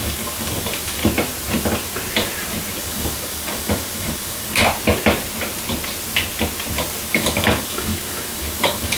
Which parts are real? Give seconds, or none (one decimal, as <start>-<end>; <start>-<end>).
1.0-2.8; 4.6-7.1